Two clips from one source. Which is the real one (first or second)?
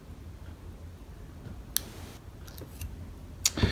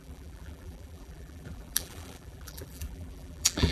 first